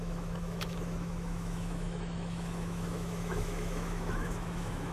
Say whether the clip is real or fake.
fake